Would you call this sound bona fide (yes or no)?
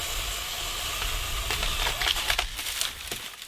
yes